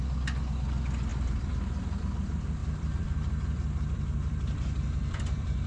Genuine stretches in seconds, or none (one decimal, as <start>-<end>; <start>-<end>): 0.0-1.1; 2.0-2.6